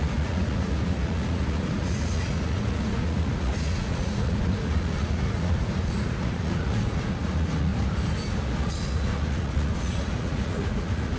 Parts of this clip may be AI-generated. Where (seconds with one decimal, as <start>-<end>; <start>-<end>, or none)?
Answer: 0.0-7.7; 8.6-11.2